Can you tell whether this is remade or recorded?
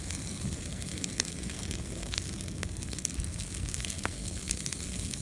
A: remade